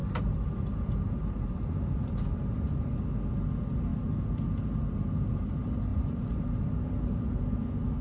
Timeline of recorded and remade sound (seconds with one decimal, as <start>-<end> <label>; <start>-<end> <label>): 0.0-2.7 remade; 2.7-5.9 recorded; 5.9-7.4 remade; 7.4-8.0 recorded